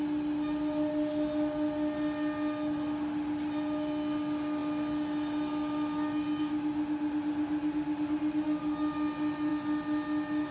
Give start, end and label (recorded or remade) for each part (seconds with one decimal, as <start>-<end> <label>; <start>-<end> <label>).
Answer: 0.0-10.5 recorded